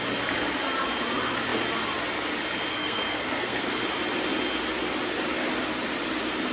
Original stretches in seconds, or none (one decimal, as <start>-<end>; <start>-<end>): 0.0-2.7; 3.6-6.5